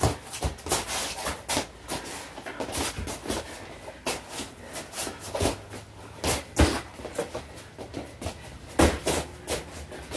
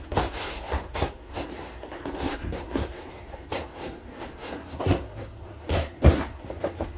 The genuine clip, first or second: first